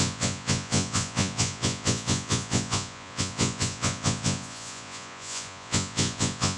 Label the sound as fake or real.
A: fake